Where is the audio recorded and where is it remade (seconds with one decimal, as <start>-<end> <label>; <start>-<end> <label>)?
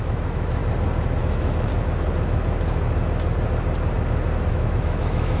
0.0-0.6 remade; 0.6-1.2 recorded; 1.2-1.7 remade; 1.7-4.5 recorded; 4.5-5.4 remade